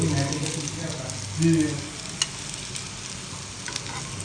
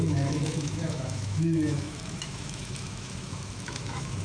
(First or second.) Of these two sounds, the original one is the first